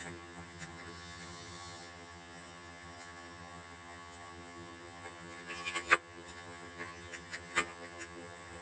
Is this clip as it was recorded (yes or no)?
no